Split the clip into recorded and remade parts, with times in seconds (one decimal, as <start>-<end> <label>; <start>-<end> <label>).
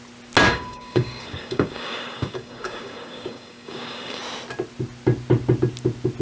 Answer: 0.0-0.5 recorded; 0.5-4.2 remade; 4.2-6.2 recorded